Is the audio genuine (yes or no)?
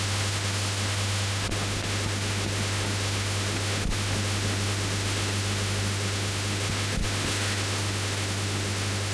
no